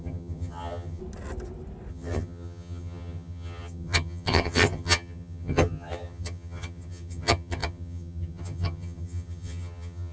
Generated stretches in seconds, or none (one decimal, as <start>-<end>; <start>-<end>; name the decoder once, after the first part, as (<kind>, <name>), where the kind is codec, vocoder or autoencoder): 0.0-1.0 (vocoder, HiFi-GAN); 1.9-10.1